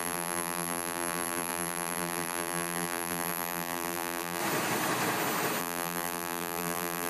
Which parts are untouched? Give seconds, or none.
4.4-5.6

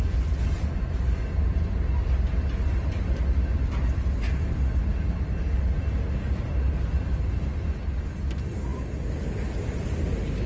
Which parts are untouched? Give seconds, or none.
0.0-10.5